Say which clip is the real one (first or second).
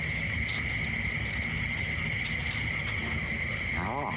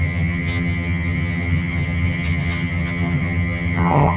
first